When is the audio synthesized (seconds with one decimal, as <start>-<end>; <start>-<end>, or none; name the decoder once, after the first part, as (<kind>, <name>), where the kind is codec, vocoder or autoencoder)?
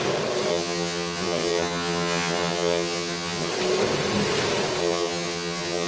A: 0.5-3.5 (vocoder, HiFi-GAN); 4.8-5.9